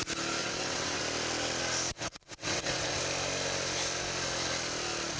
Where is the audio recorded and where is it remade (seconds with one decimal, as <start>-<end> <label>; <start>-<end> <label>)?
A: 0.0-0.4 recorded; 0.4-1.0 remade; 1.0-1.9 recorded; 1.9-3.0 remade; 3.0-5.2 recorded